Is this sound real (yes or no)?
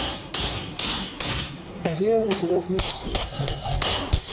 no